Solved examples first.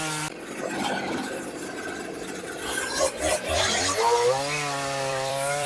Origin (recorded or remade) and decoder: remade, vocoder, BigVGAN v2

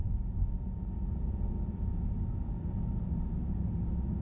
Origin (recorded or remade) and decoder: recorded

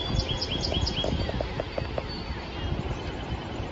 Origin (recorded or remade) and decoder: recorded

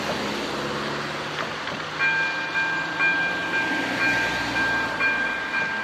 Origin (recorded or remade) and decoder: recorded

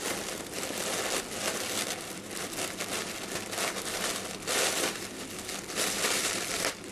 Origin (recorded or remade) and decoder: recorded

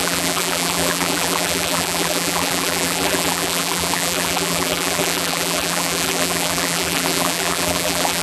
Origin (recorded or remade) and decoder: remade, vocoder, BigVGAN v2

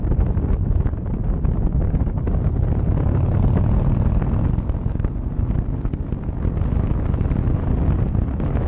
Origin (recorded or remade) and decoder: recorded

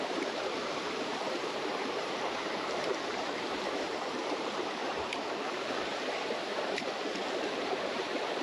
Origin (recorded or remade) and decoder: remade, vocoder, BigVGAN v2